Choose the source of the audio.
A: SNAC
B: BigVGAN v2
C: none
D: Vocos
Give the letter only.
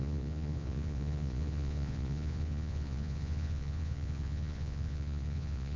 D